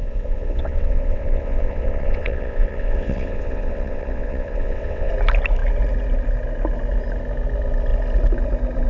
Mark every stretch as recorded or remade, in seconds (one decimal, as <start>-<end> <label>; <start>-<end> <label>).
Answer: 0.0-5.1 remade; 5.1-8.9 recorded